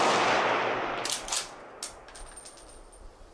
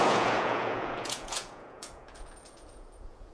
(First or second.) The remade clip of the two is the second